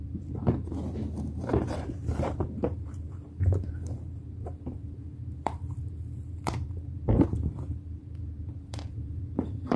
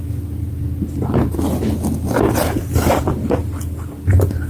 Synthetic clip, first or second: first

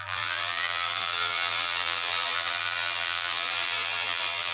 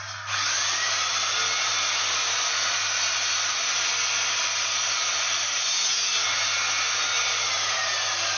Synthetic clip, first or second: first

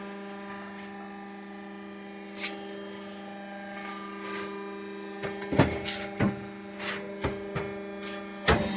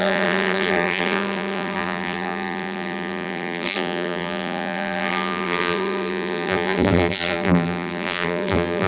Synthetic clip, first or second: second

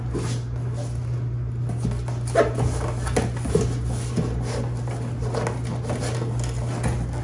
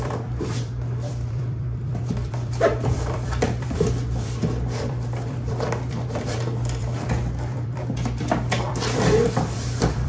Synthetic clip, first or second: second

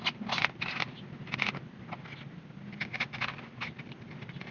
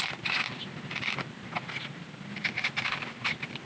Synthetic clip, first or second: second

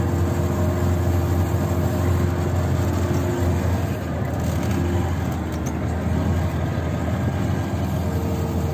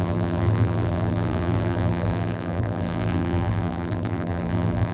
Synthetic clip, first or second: second